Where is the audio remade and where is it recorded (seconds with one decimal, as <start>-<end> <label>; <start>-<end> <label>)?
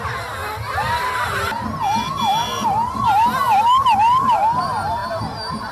0.0-5.7 recorded